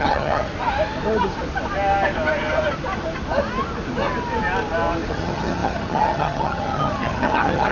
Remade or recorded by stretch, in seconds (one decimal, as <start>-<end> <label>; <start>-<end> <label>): 0.0-0.5 remade; 0.5-5.1 recorded; 5.1-7.7 remade